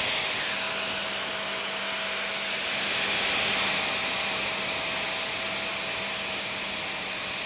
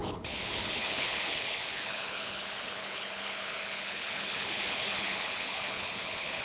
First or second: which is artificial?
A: second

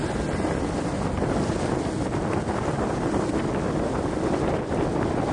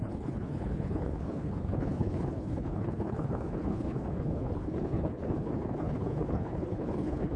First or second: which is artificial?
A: second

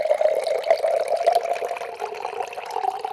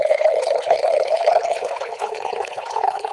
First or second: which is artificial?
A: second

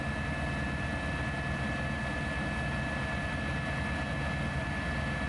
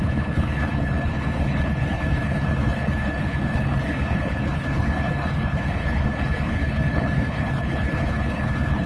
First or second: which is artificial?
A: second